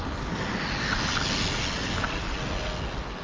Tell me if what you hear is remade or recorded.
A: recorded